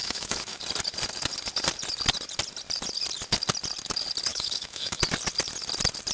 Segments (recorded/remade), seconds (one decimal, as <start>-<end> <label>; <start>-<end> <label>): 0.0-0.6 remade; 0.6-4.3 recorded; 4.3-5.0 remade; 5.0-6.1 recorded